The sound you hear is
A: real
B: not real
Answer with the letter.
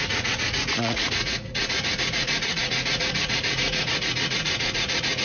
B